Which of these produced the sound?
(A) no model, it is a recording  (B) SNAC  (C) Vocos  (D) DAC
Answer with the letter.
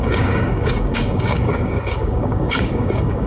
D